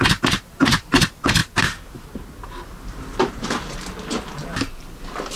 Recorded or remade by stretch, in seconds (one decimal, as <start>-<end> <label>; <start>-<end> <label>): 0.0-5.4 recorded